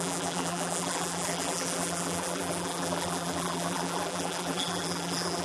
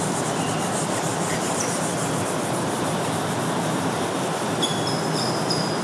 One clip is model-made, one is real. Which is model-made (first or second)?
first